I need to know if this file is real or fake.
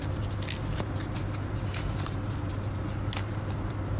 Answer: real